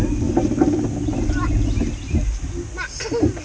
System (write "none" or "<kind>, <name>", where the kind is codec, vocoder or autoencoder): none